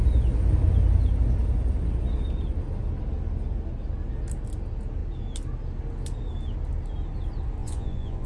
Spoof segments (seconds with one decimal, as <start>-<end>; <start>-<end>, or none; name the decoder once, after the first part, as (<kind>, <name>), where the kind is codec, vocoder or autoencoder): 7.6-8.3 (vocoder, Vocos)